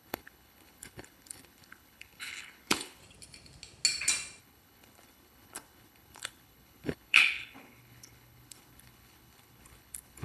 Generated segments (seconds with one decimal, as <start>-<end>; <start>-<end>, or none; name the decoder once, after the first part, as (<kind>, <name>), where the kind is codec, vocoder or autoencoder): 0.0-3.0 (codec, HILCodec); 4.4-10.2